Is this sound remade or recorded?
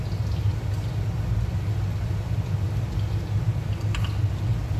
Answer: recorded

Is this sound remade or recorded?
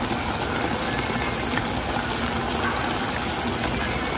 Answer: recorded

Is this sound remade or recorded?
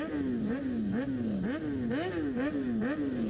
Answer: recorded